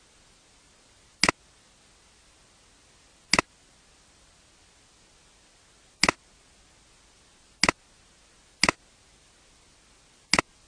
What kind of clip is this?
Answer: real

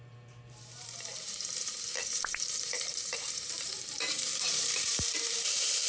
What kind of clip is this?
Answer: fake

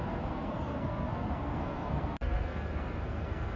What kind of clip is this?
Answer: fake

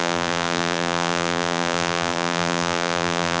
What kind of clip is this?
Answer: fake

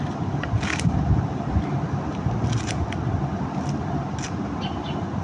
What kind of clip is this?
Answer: real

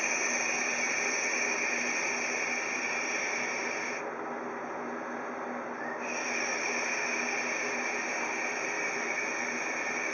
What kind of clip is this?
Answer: real